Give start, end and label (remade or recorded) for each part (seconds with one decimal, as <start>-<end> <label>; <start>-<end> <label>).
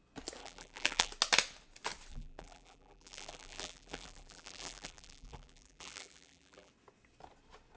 0.0-0.4 recorded; 0.4-1.1 remade; 1.1-2.1 recorded; 2.1-6.7 remade; 6.7-7.8 recorded